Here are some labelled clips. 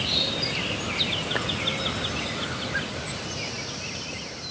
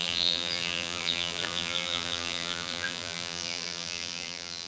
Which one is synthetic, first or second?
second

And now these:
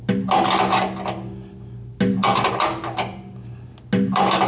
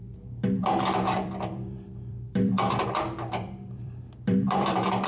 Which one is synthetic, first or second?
second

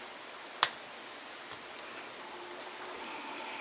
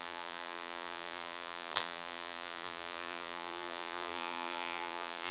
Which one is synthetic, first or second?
second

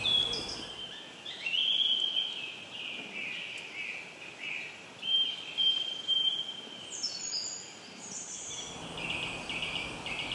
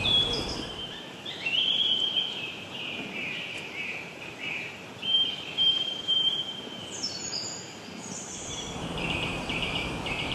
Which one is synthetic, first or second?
second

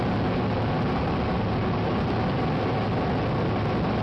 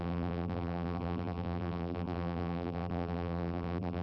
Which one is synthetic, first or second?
second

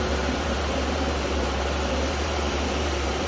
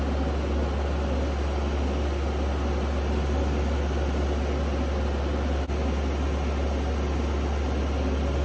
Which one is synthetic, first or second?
first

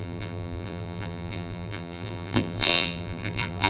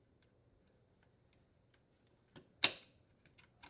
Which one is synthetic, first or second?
first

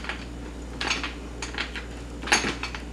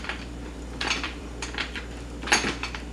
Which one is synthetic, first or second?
second